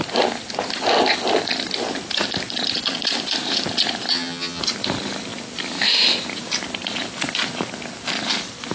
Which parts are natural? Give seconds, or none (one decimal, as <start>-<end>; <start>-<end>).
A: 0.0-4.1; 4.6-8.7